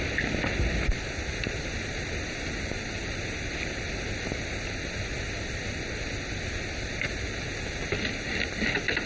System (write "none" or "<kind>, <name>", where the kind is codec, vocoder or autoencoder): none